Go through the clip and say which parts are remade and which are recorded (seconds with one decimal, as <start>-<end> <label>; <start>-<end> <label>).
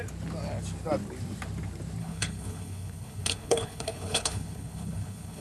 0.0-2.0 recorded; 2.0-5.4 remade